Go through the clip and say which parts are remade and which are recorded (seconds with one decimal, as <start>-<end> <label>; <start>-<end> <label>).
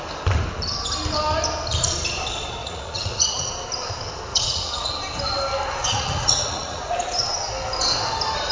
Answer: 0.0-2.6 recorded; 2.6-3.5 remade; 3.5-4.3 recorded; 4.3-4.9 remade; 4.9-5.8 recorded; 5.8-7.2 remade; 7.2-8.5 recorded